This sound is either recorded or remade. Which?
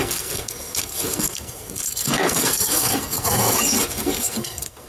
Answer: remade